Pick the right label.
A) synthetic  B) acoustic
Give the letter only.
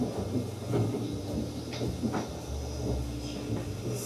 B